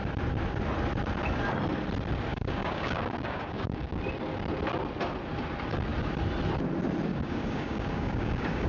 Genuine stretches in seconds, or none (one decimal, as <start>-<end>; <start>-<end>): 0.0-2.3; 4.0-7.1